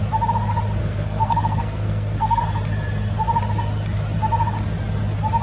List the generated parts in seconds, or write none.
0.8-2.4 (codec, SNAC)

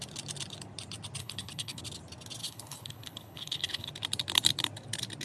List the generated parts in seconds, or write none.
1.2-1.8 (codec, HILCodec); 2.4-3.9

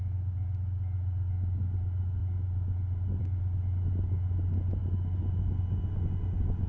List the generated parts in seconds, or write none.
none

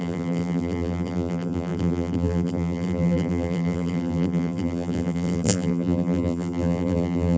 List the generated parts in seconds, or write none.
0.0-7.4 (vocoder, BigVGAN v2)

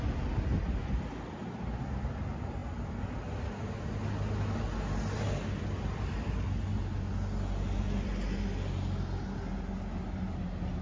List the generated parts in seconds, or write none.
none